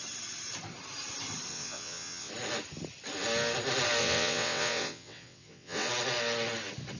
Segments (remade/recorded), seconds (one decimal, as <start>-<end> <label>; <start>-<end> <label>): 0.0-1.5 recorded; 1.5-2.3 remade; 2.3-4.0 recorded; 4.0-5.9 remade; 5.9-7.0 recorded